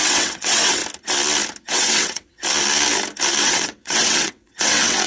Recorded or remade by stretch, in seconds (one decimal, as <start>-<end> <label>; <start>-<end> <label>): 0.0-0.8 remade; 0.8-1.6 recorded; 1.6-2.4 remade; 2.4-3.4 recorded; 3.4-5.1 remade

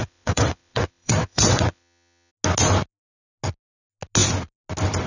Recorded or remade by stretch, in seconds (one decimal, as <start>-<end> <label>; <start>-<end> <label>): 0.0-2.3 remade; 2.3-5.1 recorded

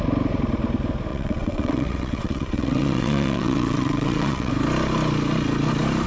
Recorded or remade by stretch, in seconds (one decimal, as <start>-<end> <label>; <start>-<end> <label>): 0.0-1.1 recorded; 1.1-4.5 remade; 4.5-6.1 recorded

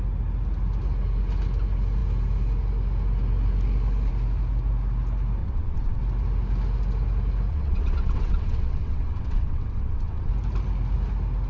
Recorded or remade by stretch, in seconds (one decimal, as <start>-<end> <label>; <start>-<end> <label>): 0.0-5.4 recorded; 5.4-6.0 remade; 6.0-7.5 recorded; 7.5-10.3 remade; 10.3-11.5 recorded

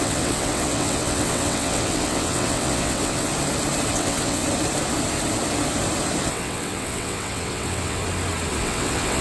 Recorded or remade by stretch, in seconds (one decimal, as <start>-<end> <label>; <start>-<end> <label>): 0.0-3.3 remade; 3.3-3.9 recorded; 3.9-4.4 remade; 4.4-6.2 recorded; 6.2-8.0 remade; 8.0-8.6 recorded; 8.6-9.2 remade

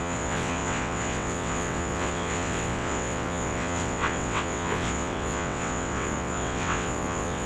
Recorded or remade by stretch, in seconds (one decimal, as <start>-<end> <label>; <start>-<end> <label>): 0.0-7.5 remade

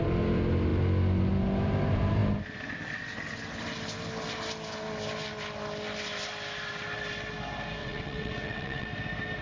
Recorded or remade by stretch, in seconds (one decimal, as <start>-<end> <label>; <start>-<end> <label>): 0.0-7.8 recorded; 7.8-8.9 remade; 8.9-9.4 recorded

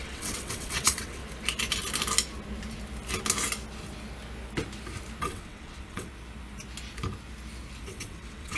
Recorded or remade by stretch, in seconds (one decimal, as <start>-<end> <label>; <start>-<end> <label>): 0.0-1.2 remade; 1.2-5.2 recorded; 5.2-6.1 remade; 6.1-7.8 recorded; 7.8-8.6 remade